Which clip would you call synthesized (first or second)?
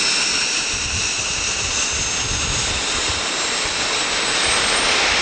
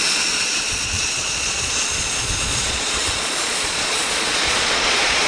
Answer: second